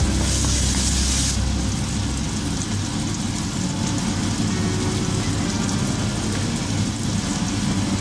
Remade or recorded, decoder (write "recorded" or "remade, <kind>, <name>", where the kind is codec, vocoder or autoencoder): recorded